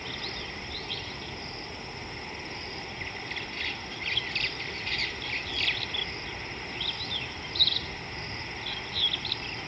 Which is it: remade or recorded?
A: remade